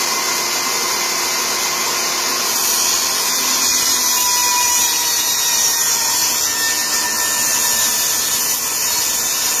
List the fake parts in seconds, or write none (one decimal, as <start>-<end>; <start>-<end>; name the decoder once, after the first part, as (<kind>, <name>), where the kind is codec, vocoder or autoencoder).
4.4-6.3 (vocoder, BigVGAN v2)